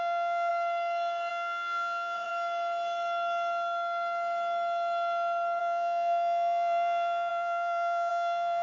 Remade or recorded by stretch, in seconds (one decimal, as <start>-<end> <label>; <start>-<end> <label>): 0.0-0.5 remade; 0.5-1.3 recorded; 1.3-2.3 remade; 2.3-5.6 recorded; 5.6-8.6 remade